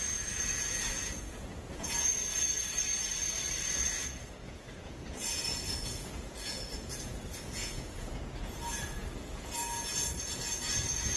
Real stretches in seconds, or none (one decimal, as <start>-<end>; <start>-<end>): 2.8-3.6